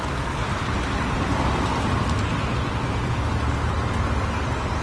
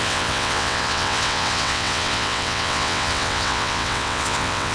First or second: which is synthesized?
second